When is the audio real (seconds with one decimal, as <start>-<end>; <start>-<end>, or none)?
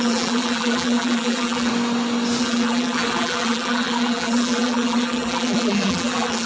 1.7-2.4